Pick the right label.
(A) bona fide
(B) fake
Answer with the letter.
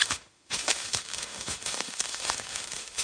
B